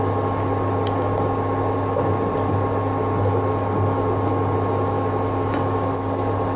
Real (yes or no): yes